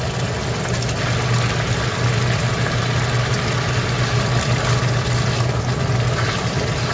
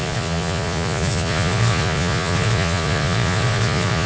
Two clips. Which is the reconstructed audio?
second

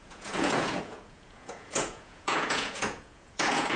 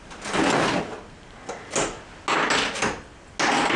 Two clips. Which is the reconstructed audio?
first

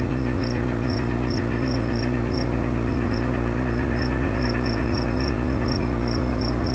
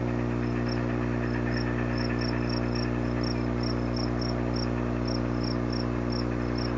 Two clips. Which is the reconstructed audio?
first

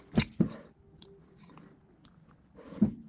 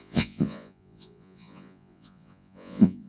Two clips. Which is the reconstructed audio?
second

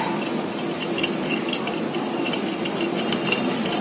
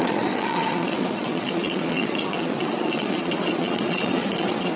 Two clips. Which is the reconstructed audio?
second